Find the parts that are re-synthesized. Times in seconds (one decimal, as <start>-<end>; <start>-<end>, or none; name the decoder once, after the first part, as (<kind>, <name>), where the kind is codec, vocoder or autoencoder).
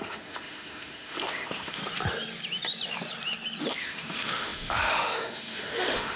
0.0-1.8 (autoencoder, DAC-VAE); 3.7-6.2